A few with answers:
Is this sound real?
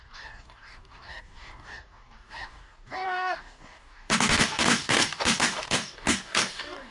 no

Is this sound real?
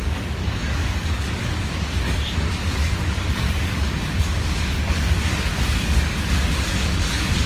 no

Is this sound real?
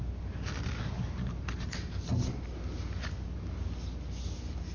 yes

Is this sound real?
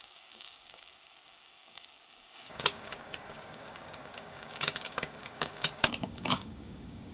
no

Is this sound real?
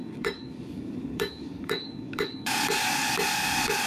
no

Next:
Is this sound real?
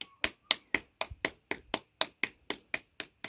yes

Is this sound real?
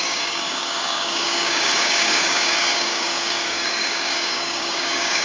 no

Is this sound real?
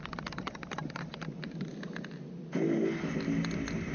yes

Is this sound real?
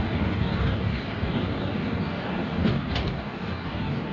no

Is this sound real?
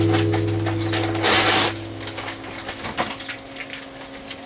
yes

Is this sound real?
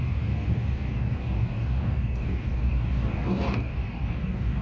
no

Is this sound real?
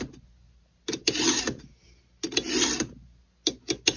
yes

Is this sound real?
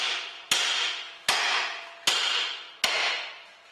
yes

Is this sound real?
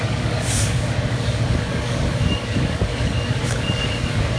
no